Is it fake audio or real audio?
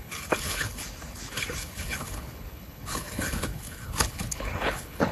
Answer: fake